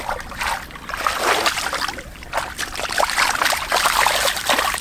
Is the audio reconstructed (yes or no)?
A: no